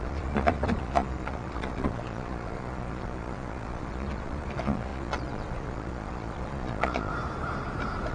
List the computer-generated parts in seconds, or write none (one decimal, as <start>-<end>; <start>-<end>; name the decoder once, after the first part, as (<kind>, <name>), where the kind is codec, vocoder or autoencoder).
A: 0.0-7.1 (vocoder, Vocos)